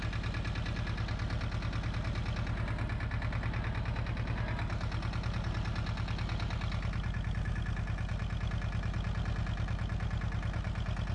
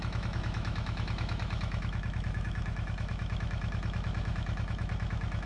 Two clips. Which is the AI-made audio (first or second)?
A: second